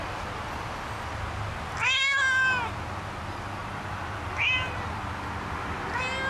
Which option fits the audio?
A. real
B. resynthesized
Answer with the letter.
A